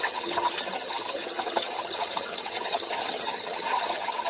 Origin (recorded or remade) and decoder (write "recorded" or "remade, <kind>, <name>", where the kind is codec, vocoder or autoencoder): remade, vocoder, HiFi-GAN